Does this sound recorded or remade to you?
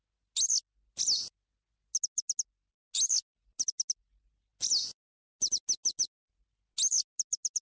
recorded